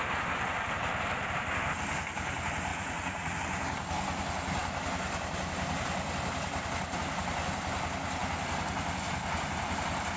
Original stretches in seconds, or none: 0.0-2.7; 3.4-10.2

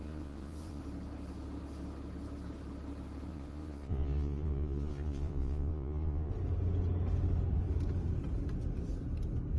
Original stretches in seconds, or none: 0.8-3.3; 6.3-9.6

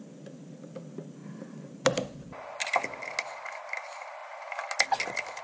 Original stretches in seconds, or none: 0.0-5.4